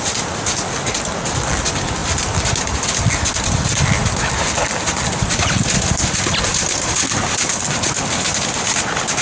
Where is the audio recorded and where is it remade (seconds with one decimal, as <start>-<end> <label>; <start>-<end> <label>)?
0.0-9.2 recorded

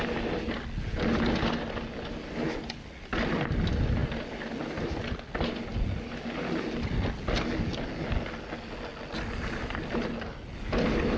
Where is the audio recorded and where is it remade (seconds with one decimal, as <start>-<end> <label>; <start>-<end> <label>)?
0.0-11.2 recorded

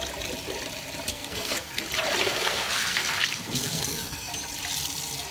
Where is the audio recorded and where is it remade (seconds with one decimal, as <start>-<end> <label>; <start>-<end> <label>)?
0.0-1.1 recorded; 1.1-1.8 remade; 1.8-2.2 recorded; 2.2-4.3 remade; 4.3-5.3 recorded

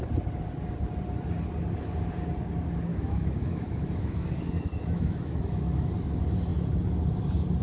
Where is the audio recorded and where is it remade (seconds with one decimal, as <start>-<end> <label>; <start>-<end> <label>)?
0.0-2.9 recorded; 2.9-5.9 remade; 5.9-7.6 recorded

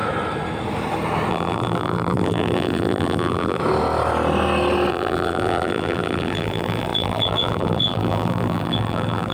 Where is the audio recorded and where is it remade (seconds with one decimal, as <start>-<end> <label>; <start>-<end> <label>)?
0.0-1.3 recorded; 1.3-3.6 remade; 3.6-4.9 recorded; 4.9-9.3 remade

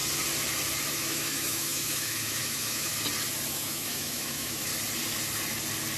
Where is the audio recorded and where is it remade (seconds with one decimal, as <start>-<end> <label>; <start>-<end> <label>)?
0.0-0.9 recorded; 0.9-2.9 remade; 2.9-3.5 recorded; 3.5-4.7 remade; 4.7-6.0 recorded

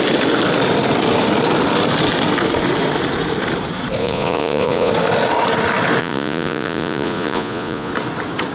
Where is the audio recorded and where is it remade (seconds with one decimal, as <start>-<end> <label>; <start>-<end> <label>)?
0.0-4.0 recorded; 4.0-4.9 remade; 4.9-6.0 recorded; 6.0-7.9 remade; 7.9-8.5 recorded